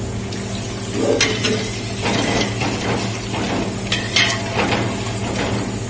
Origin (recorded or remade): recorded